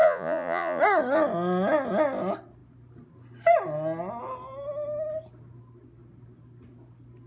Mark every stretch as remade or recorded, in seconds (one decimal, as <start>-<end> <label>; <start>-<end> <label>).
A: 0.0-0.8 remade; 0.8-7.3 recorded